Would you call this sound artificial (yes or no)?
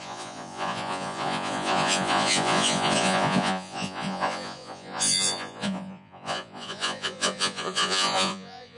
yes